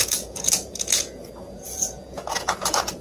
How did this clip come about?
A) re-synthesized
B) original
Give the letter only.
A